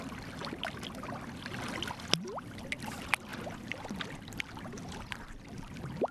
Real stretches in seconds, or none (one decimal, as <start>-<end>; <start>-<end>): 0.0-6.1